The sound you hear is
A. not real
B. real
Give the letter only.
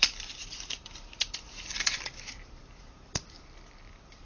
A